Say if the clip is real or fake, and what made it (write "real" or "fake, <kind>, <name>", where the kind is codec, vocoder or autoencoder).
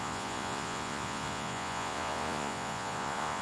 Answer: fake, vocoder, Vocos